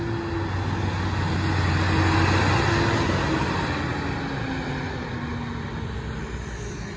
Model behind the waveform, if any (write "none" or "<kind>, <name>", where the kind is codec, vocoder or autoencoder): none